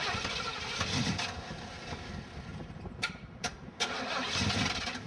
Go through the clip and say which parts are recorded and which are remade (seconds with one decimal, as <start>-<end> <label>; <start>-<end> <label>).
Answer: 0.0-2.5 recorded; 2.5-3.9 remade; 3.9-5.1 recorded